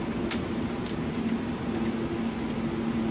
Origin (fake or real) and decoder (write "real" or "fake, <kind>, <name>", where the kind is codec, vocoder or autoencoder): real